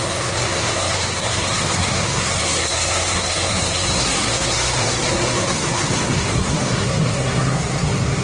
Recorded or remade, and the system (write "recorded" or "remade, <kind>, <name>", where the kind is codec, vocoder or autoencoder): remade, codec, SNAC